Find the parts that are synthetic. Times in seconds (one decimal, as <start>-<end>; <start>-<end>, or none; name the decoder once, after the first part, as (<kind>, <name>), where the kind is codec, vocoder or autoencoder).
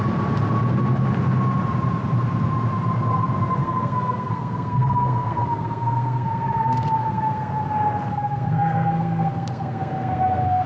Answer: 3.6-7.5 (codec, SNAC); 8.1-10.7